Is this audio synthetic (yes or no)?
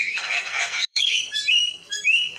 yes